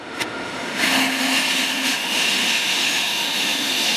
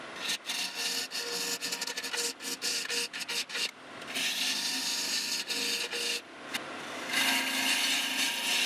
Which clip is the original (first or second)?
second